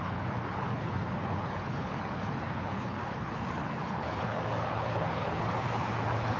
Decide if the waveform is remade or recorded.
remade